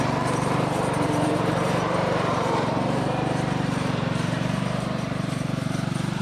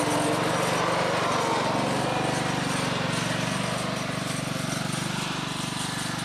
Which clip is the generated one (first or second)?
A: first